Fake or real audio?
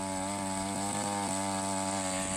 real